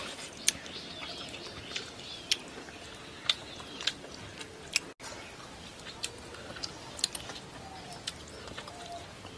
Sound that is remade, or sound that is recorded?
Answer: recorded